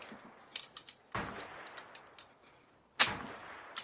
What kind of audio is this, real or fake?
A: real